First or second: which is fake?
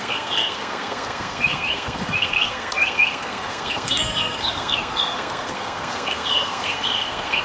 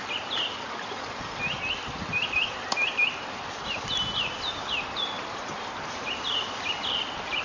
first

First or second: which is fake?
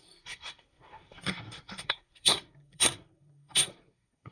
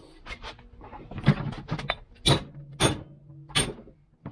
first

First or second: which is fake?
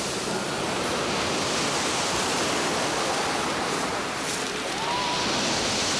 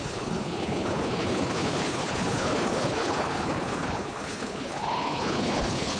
second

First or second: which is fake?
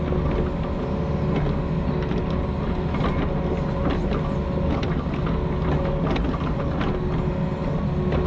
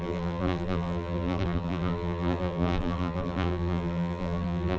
second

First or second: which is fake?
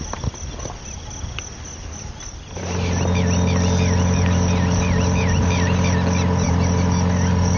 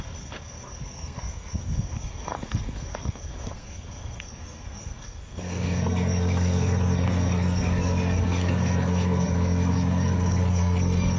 second